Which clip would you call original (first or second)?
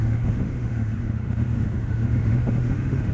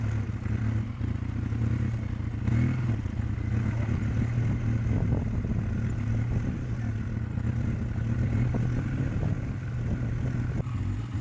second